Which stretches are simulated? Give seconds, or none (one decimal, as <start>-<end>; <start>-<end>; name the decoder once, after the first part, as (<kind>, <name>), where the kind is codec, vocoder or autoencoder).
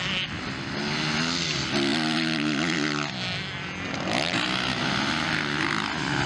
none